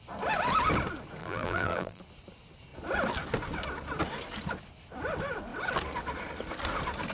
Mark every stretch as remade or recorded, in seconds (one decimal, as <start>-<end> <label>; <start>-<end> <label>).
0.0-1.2 recorded; 1.2-2.0 remade; 2.0-7.1 recorded